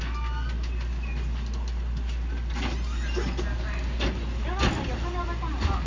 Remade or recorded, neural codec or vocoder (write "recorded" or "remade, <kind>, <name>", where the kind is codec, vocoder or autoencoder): recorded